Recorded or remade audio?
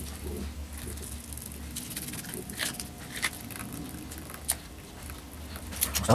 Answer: recorded